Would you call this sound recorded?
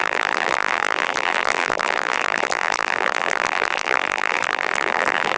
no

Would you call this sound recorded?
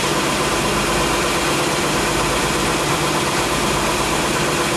no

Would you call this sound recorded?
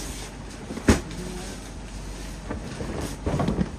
yes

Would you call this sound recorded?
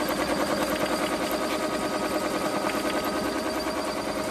yes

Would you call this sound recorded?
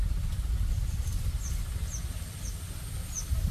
yes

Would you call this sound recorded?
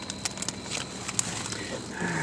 yes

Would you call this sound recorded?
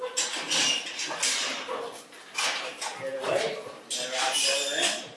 yes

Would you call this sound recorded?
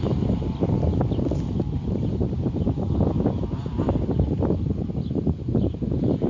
yes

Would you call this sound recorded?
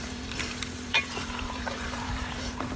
no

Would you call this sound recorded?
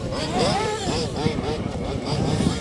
no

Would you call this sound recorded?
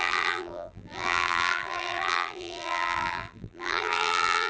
no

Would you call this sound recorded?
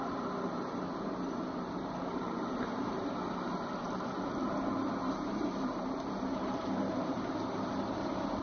no